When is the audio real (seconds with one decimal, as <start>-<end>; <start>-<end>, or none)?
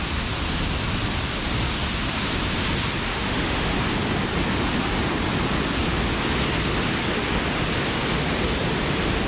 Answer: 0.0-3.1; 3.7-9.3